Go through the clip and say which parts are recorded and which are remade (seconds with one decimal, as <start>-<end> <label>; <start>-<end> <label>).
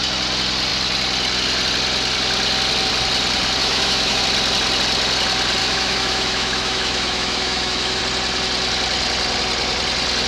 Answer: 0.0-3.6 recorded; 3.6-4.2 remade; 4.2-5.6 recorded; 5.6-8.0 remade; 8.0-10.3 recorded